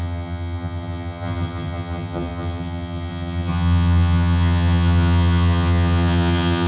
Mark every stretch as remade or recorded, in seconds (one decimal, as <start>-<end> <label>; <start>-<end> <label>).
0.0-6.7 remade